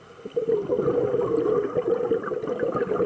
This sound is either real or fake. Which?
real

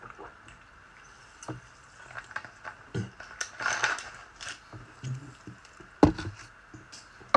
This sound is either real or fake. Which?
real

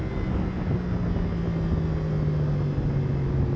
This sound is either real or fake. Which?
real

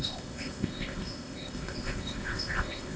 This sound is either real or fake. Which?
fake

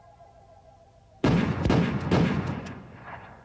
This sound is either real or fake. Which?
fake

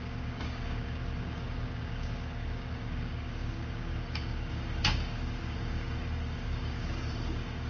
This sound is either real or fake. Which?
fake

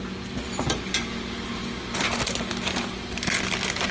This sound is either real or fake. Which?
real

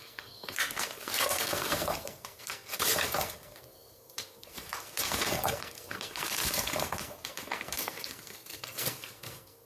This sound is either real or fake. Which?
fake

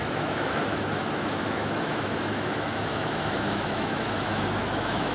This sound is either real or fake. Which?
fake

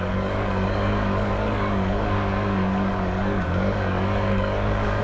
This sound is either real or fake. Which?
fake